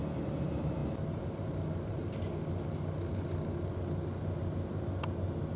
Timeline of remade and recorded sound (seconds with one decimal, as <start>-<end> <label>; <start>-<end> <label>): 0.0-2.0 remade; 2.0-5.6 recorded

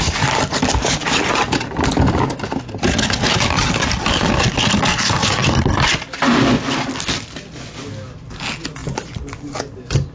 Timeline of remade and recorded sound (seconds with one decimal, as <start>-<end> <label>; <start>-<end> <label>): 0.0-10.1 recorded